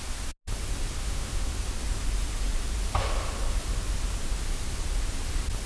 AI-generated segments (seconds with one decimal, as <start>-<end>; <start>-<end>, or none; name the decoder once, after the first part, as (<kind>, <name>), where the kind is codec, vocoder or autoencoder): 1.0-1.5 (autoencoder, DAC-VAE)